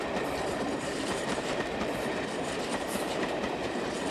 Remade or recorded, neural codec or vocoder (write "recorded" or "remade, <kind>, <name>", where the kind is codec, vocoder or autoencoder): remade, vocoder, BigVGAN v2